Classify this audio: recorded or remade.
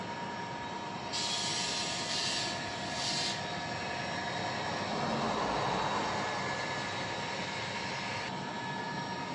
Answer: recorded